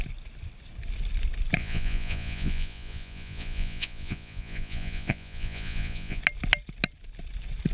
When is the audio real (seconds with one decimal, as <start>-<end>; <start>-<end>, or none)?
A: 0.0-1.6; 6.2-7.7